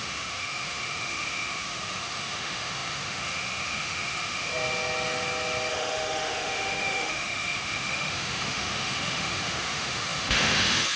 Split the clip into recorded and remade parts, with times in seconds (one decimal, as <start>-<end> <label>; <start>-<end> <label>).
0.0-4.5 remade; 4.5-5.7 recorded; 5.7-11.0 remade

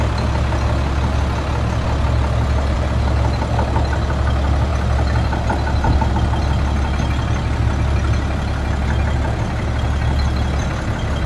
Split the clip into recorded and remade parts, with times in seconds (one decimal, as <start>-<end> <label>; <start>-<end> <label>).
0.0-11.3 recorded

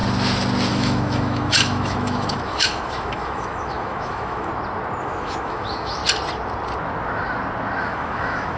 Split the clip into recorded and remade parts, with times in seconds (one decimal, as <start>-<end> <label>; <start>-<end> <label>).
0.0-0.7 recorded; 0.7-4.5 remade; 4.5-5.0 recorded; 5.0-6.0 remade; 6.0-7.8 recorded; 7.8-8.6 remade